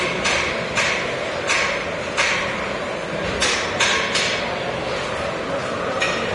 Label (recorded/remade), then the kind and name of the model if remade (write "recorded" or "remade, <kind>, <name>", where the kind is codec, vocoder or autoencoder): recorded